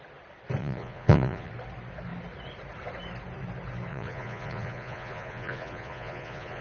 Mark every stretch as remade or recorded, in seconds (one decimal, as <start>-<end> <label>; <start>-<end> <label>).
0.0-0.6 recorded; 0.6-1.5 remade; 1.5-3.9 recorded; 3.9-6.6 remade